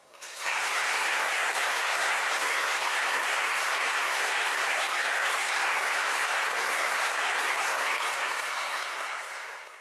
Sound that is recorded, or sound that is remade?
remade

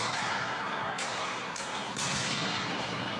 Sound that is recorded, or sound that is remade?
remade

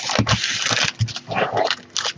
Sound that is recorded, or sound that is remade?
recorded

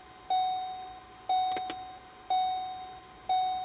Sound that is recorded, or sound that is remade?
recorded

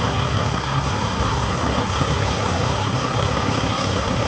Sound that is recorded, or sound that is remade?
remade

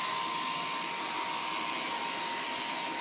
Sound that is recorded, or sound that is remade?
recorded